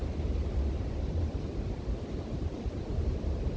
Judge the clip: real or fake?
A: real